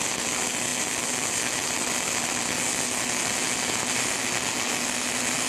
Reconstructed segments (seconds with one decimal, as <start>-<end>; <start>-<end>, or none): none